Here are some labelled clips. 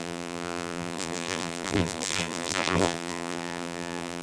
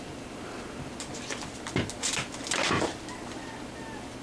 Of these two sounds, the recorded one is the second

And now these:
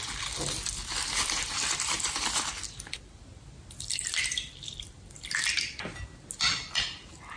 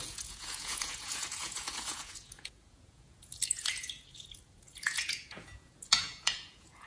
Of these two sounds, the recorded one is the first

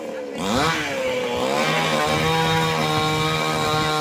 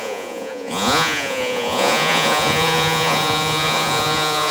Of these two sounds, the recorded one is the first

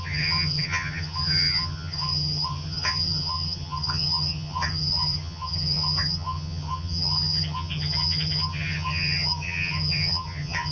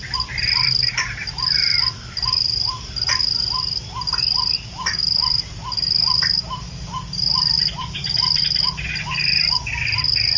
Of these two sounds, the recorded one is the second